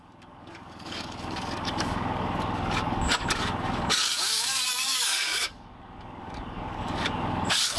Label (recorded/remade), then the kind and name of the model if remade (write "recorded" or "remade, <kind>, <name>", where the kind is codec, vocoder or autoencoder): remade, codec, DAC